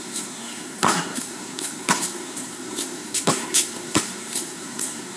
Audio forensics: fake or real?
fake